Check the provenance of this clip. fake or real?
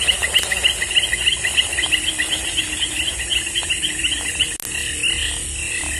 real